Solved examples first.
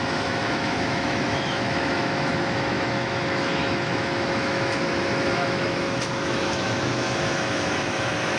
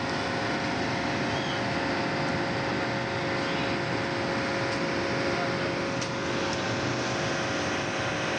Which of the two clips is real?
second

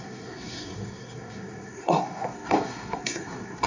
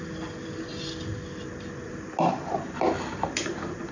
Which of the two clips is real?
second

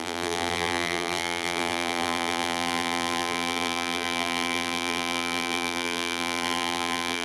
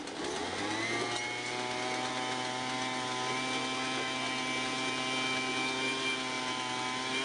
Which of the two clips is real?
second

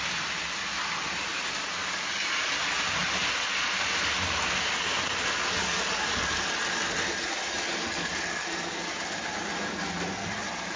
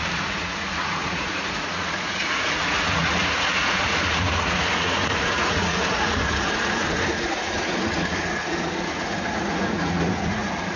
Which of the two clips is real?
first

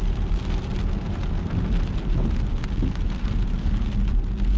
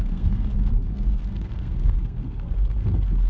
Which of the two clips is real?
first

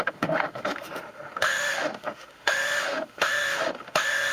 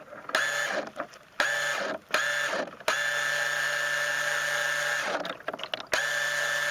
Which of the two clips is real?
second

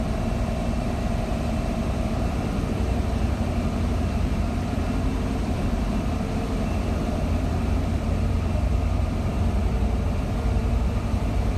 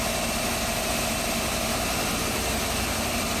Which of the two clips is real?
second